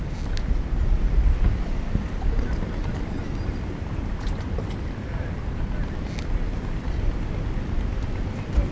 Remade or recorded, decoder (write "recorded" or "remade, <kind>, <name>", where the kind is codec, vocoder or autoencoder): recorded